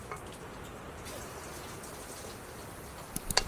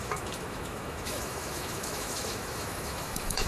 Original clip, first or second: first